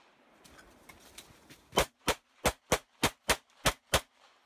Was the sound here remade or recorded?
recorded